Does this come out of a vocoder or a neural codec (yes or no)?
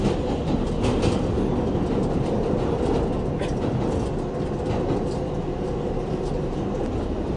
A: no